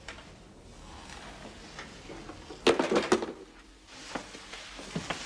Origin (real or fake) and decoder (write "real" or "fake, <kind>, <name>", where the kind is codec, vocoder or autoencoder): real